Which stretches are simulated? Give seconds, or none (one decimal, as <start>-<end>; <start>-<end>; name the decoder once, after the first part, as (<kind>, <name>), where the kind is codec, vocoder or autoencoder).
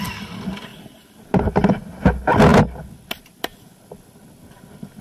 0.7-1.5 (vocoder, BigVGAN v2)